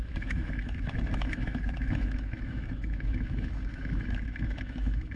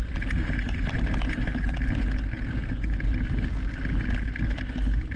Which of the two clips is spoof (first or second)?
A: first